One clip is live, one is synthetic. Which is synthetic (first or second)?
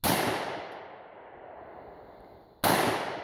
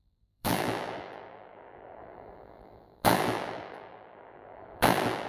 second